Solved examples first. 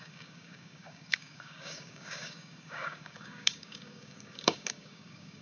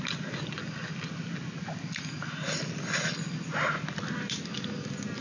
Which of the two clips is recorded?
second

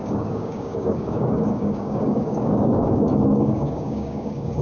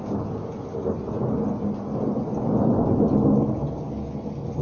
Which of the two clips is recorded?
second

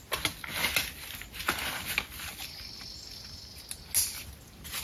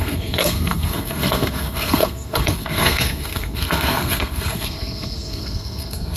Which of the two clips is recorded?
first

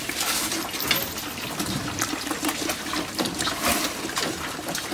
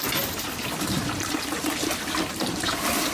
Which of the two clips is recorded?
first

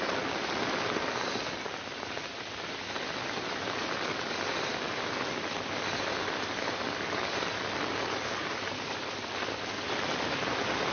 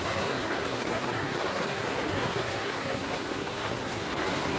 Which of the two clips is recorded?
first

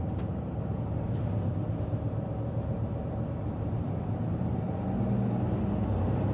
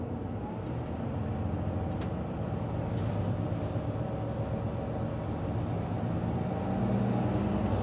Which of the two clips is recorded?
second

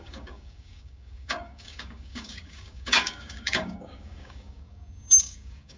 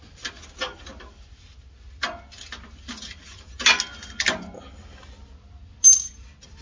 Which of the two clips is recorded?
second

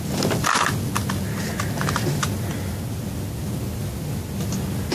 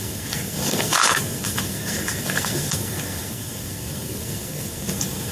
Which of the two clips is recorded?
first